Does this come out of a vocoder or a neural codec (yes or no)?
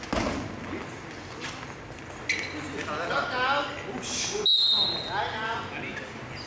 no